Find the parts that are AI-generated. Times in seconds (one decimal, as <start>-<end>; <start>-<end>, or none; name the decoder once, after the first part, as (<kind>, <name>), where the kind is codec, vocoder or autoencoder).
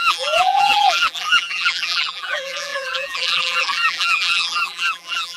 0.0-5.4 (vocoder, BigVGAN v2)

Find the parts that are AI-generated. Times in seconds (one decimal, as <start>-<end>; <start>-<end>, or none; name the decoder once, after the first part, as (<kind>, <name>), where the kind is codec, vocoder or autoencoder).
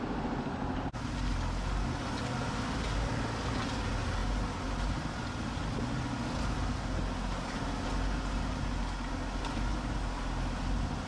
none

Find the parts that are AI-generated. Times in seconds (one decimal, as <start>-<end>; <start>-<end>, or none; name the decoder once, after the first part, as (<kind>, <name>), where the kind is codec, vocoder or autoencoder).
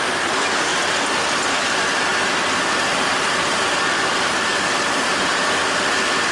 0.0-0.7 (vocoder, BigVGAN v2); 1.7-2.1; 2.8-4.5; 5.8-6.3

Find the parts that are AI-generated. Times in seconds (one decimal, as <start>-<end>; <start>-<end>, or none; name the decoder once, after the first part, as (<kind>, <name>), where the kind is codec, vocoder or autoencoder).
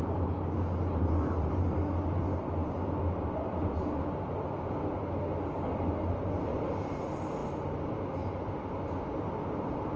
none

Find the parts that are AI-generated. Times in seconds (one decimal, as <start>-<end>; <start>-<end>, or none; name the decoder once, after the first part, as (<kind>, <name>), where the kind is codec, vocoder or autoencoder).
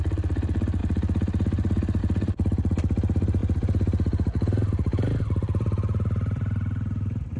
0.0-3.4 (vocoder, BigVGAN v2); 5.2-7.4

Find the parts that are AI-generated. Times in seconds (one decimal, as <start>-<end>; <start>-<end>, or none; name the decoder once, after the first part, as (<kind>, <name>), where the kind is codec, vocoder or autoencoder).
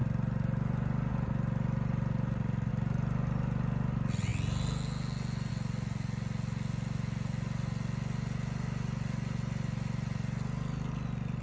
none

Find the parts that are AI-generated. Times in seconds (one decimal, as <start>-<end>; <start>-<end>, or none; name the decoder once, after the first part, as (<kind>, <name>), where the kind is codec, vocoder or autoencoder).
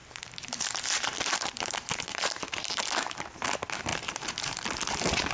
0.0-1.6 (vocoder, BigVGAN v2); 2.1-2.7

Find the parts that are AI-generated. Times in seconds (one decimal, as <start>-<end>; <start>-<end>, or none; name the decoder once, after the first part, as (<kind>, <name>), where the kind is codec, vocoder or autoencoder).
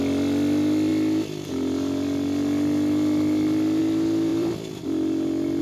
4.3-4.8 (vocoder, BigVGAN v2)